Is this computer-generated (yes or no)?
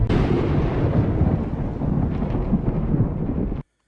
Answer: no